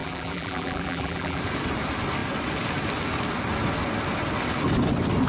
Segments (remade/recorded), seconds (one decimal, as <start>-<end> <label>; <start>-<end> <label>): 0.0-1.4 remade; 1.4-5.3 recorded